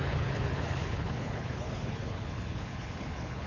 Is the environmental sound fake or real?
fake